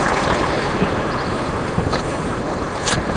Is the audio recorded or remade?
recorded